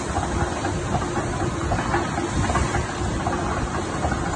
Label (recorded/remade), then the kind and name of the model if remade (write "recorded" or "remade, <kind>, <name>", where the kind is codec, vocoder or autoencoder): recorded